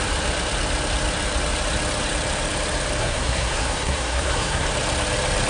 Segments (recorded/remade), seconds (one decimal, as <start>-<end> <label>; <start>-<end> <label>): 0.0-3.0 recorded; 3.0-4.7 remade; 4.7-5.5 recorded